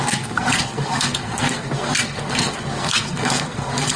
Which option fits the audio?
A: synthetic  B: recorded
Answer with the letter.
A